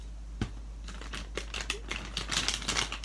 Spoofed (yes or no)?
no